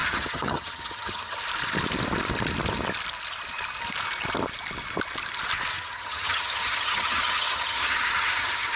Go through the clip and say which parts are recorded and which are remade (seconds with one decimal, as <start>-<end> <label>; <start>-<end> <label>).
0.0-1.4 remade; 1.4-5.7 recorded; 5.7-8.8 remade